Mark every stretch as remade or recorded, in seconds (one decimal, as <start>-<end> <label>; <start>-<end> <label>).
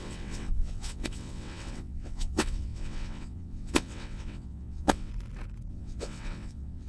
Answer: 0.0-5.1 remade; 5.1-5.7 recorded; 5.7-6.9 remade